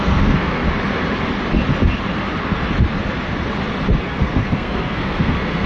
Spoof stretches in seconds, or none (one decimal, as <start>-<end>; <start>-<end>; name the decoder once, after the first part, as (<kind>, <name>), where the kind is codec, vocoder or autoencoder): 0.0-0.6 (codec, SNAC); 4.0-5.7